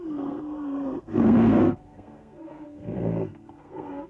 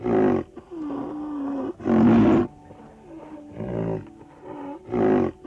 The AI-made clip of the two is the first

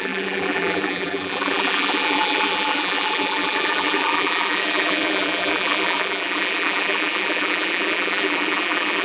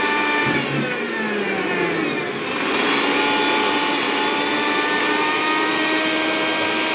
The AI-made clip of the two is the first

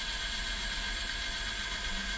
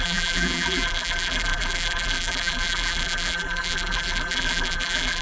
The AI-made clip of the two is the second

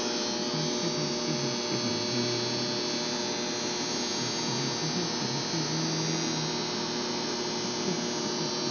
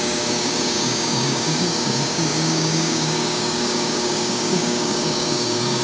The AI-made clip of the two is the second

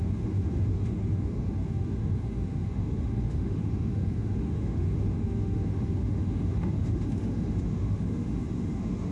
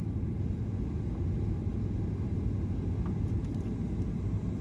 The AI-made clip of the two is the first